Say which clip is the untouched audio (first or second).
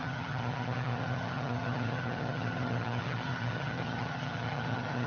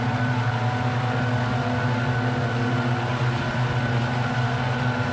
second